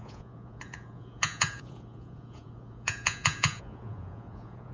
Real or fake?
fake